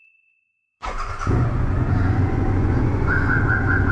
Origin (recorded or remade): remade